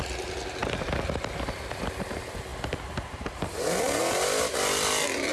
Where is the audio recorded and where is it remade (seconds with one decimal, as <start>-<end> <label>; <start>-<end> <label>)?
0.0-5.3 recorded